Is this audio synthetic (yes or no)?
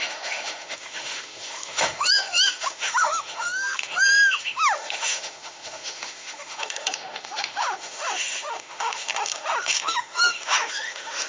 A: yes